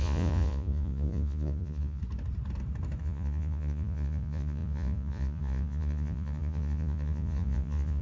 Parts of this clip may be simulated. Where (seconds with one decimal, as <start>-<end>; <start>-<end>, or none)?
0.0-2.0; 3.0-8.0